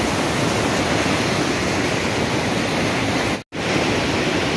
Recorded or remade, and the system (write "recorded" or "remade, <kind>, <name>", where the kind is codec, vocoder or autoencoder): recorded